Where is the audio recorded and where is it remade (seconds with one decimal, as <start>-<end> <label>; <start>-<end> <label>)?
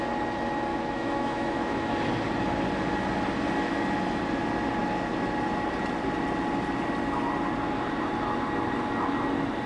0.0-0.7 recorded; 0.7-1.9 remade; 1.9-9.7 recorded